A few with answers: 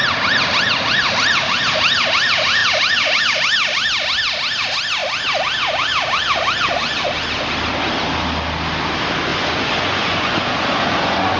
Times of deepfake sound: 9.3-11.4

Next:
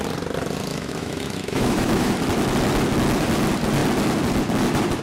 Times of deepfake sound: 0.7-2.1

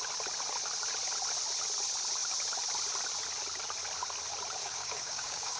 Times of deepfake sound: 4.6-5.6

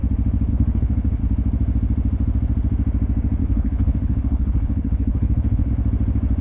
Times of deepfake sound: 0.5-1.2; 3.4-5.7

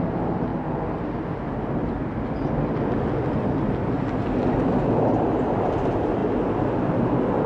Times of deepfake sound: 0.0-0.5; 5.0-6.2